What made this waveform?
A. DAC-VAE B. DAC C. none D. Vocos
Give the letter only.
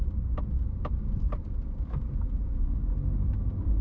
C